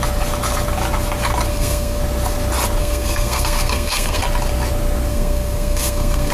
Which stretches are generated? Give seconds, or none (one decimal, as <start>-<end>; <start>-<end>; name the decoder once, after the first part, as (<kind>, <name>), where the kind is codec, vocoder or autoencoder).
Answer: 1.5-2.0 (codec, SNAC); 2.8-4.2; 5.1-6.3